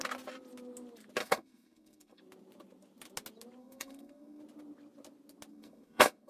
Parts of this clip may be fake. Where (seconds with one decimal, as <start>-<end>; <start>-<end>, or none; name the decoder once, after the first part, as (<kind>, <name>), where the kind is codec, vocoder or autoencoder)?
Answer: 1.2-2.2 (codec, SNAC); 3.6-4.4; 5.5-6.3